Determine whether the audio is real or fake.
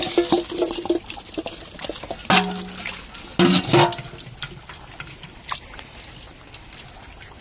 real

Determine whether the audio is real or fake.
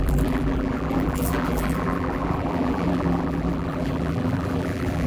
fake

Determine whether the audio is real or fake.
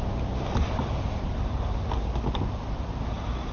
real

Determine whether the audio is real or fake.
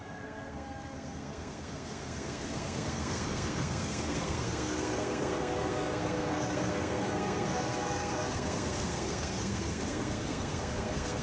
fake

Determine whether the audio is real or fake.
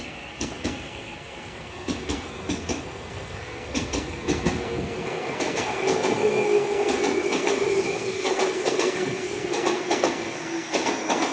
fake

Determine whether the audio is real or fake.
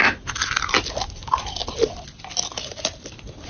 real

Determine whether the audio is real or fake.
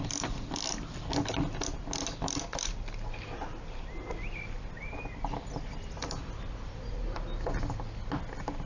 real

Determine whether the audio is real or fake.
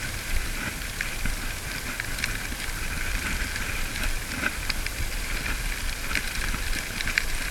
fake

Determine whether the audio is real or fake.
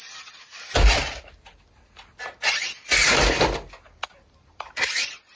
real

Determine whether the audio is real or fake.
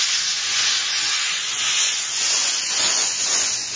fake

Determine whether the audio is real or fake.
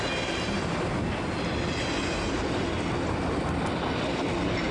real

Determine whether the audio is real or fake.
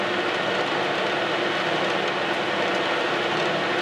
real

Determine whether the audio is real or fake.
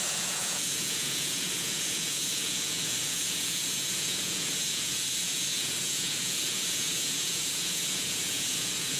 fake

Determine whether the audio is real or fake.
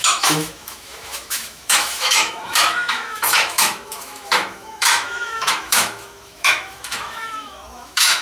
fake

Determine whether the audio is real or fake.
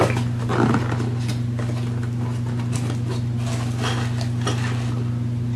real